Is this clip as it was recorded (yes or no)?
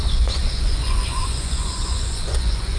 no